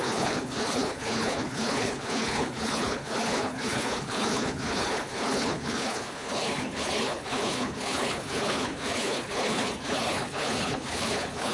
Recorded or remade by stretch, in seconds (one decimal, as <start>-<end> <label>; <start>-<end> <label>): 0.0-11.5 remade